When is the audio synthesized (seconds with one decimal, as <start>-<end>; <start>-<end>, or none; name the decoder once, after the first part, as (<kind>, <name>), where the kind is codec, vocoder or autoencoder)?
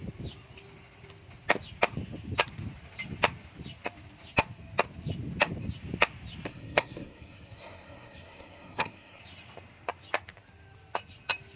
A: 6.5-9.2 (codec, SNAC)